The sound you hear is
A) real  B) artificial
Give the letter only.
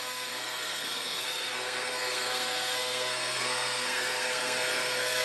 B